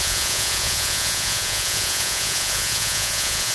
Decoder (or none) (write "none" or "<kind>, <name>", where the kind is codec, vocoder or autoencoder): vocoder, Vocos